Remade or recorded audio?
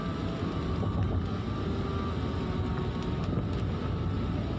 recorded